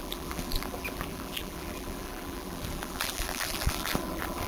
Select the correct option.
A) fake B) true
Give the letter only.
A